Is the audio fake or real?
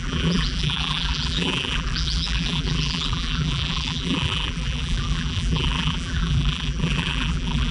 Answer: fake